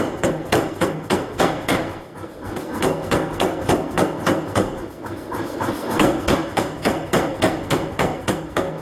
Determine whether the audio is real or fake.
fake